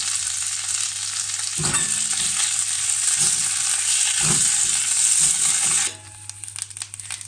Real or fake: real